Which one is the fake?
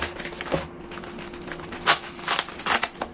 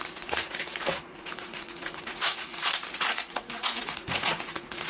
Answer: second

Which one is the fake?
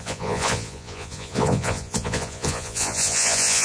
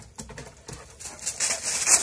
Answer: first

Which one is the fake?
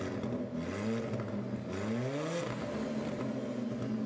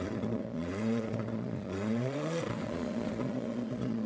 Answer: second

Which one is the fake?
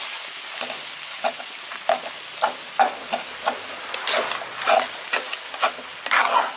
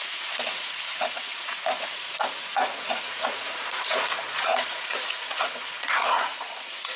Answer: second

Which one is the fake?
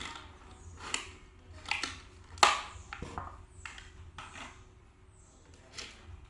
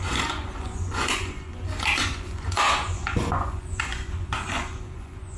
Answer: second